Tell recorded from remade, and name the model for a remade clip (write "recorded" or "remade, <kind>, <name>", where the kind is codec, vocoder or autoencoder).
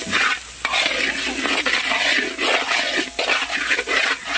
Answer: recorded